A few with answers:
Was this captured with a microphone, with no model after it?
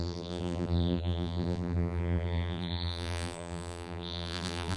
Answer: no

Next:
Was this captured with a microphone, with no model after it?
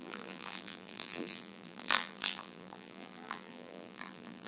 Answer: no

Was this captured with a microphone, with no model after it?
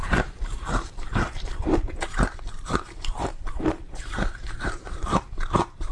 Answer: no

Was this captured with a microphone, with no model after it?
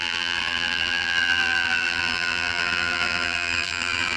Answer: no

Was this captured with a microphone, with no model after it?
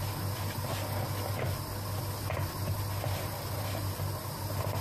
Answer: yes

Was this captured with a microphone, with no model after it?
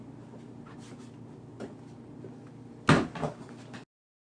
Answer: yes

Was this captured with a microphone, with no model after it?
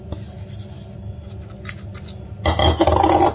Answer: yes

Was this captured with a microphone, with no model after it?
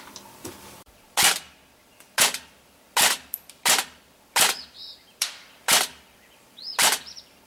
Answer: no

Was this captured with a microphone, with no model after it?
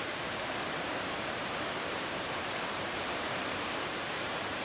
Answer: no